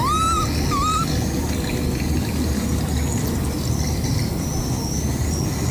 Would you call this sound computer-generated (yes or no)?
no